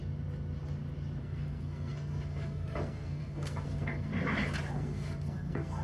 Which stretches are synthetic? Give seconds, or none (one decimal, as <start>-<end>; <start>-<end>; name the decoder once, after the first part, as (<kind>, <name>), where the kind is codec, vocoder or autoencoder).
1.2-4.1 (codec, SNAC); 4.7-5.8